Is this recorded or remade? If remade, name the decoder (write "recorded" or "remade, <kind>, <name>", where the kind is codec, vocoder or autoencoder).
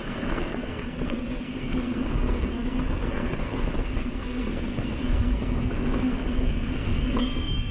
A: remade, codec, SNAC